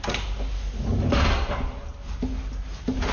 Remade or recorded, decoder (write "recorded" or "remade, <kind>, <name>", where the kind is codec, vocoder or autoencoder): recorded